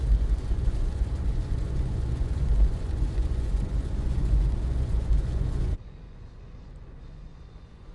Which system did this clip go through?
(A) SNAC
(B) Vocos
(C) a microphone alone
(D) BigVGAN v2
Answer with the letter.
B